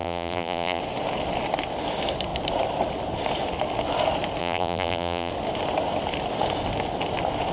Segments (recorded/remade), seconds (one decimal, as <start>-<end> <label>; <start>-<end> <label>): 0.0-0.8 remade; 0.8-4.4 recorded; 4.4-5.3 remade; 5.3-7.5 recorded